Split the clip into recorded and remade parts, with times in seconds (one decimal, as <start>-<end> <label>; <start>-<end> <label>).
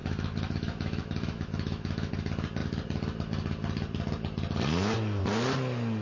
0.0-2.1 remade; 2.1-6.0 recorded